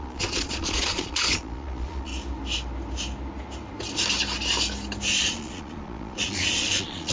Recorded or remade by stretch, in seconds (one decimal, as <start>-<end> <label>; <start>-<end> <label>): 0.0-2.1 remade; 2.1-5.1 recorded; 5.1-7.1 remade